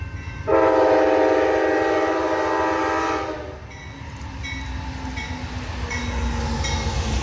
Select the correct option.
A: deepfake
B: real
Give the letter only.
B